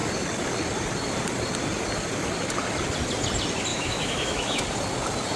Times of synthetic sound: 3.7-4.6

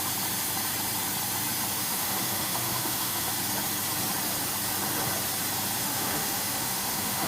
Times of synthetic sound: 1.7-3.3; 5.8-7.3

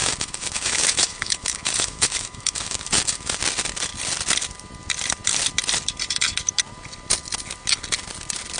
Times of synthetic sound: 0.0-3.4

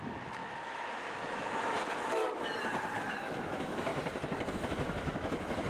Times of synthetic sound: 0.0-2.2; 3.0-3.9; 4.5-5.7